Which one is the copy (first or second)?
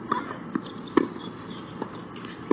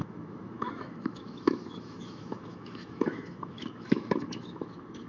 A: second